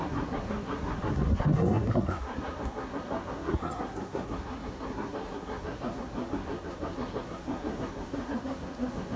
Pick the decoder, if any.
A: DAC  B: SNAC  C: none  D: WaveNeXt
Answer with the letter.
B